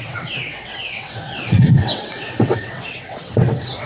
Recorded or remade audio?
remade